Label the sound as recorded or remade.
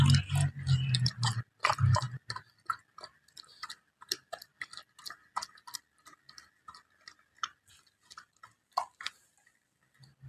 recorded